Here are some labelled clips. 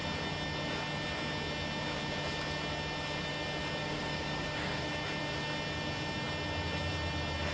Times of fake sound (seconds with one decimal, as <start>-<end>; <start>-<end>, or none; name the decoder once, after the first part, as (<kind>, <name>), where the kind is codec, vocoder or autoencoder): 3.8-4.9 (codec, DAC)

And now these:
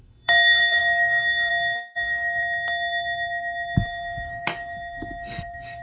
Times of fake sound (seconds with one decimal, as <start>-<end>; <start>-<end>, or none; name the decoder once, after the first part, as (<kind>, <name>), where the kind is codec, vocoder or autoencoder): 0.0-2.4 (codec, DAC); 3.9-5.8

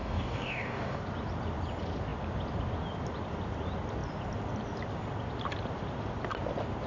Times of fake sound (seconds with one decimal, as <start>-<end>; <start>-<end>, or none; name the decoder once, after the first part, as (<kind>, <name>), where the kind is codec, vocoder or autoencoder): 0.0-1.0 (codec, DAC)